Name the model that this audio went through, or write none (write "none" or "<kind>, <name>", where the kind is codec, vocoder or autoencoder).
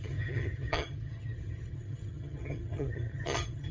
vocoder, HiFi-GAN